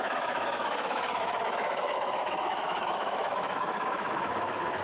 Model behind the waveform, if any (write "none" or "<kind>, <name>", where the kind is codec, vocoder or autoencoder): autoencoder, DAC-VAE